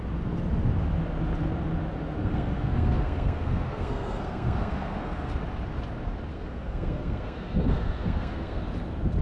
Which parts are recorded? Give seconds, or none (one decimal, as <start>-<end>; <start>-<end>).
0.0-2.2; 5.3-6.3; 8.6-9.2

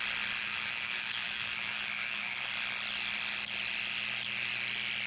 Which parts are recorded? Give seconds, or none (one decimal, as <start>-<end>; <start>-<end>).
0.0-0.4; 2.4-5.1

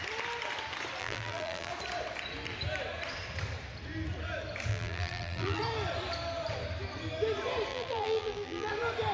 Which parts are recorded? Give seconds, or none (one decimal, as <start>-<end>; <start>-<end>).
0.0-1.0; 1.7-4.7; 5.6-7.7; 8.7-9.1